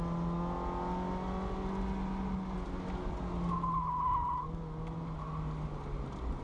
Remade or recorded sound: recorded